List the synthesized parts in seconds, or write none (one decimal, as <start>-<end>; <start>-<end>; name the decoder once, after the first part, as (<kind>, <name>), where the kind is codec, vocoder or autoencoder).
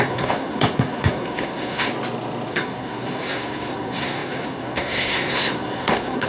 0.0-1.9 (codec, SNAC); 2.5-6.3